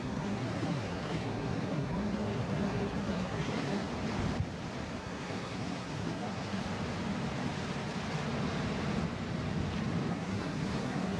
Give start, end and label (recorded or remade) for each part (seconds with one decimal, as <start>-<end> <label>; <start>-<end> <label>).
0.0-3.9 remade; 3.9-5.0 recorded; 5.0-6.6 remade; 6.6-10.1 recorded; 10.1-11.2 remade